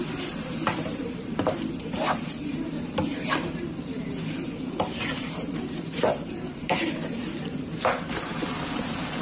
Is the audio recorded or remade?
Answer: remade